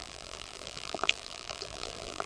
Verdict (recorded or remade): remade